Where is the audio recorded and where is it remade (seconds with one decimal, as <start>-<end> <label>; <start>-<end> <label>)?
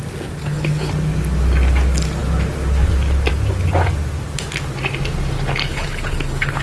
0.0-0.4 recorded; 0.4-0.9 remade; 0.9-5.7 recorded; 5.7-6.6 remade